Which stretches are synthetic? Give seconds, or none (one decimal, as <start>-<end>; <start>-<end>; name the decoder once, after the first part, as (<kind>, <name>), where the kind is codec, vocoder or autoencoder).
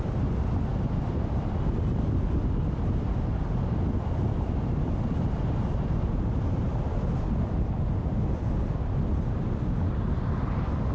none